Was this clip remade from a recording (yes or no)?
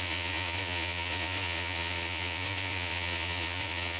yes